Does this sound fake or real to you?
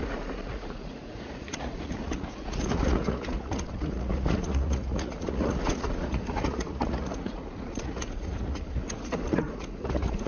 fake